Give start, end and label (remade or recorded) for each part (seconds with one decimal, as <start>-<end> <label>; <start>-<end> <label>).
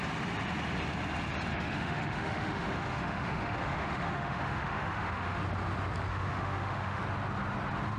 0.0-1.5 recorded; 1.5-5.4 remade; 5.4-6.1 recorded; 6.1-7.0 remade; 7.0-8.0 recorded